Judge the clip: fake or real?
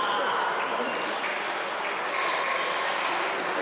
real